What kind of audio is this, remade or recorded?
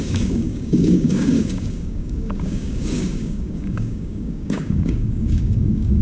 remade